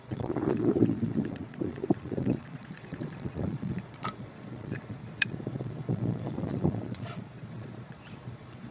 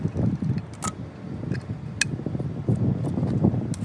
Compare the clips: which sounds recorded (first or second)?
second